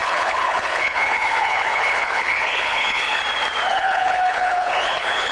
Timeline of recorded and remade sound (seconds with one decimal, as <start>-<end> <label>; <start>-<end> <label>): 0.0-3.2 remade; 3.2-3.7 recorded; 3.7-5.3 remade

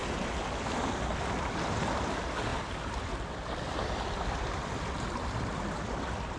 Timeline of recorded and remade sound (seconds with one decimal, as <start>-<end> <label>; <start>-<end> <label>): 0.0-2.5 recorded; 2.5-6.4 remade

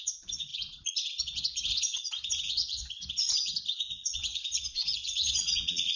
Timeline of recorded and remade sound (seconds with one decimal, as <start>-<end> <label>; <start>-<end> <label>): 0.0-6.0 remade

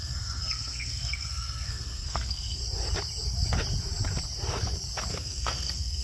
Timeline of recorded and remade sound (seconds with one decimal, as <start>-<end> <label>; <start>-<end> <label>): 0.0-2.6 remade; 2.6-5.1 recorded; 5.1-6.0 remade

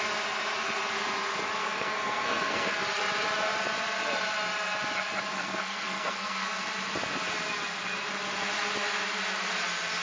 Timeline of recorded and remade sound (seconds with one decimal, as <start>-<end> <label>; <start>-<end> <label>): 0.0-1.6 recorded; 1.6-2.7 remade; 2.7-5.3 recorded; 5.3-6.7 remade; 6.7-10.0 recorded

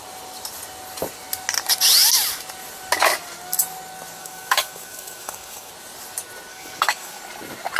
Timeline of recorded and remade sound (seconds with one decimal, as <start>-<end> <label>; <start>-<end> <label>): 0.0-4.2 recorded; 4.2-5.7 remade; 5.7-6.5 recorded; 6.5-7.2 remade; 7.2-7.8 recorded

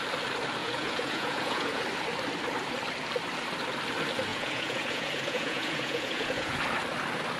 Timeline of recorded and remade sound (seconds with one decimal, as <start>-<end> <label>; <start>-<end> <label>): 0.0-0.6 recorded; 0.6-1.8 remade; 1.8-4.3 recorded; 4.3-6.6 remade; 6.6-7.4 recorded

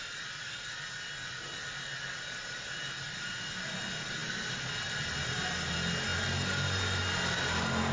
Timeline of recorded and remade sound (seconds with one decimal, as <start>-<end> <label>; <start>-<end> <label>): 0.0-7.9 recorded